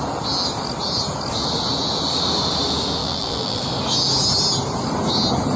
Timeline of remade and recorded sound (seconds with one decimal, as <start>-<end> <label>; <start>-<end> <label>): 0.0-3.0 recorded; 3.0-3.6 remade; 3.6-5.6 recorded